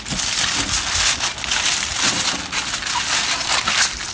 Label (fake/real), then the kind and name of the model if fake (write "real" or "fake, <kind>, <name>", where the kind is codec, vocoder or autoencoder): real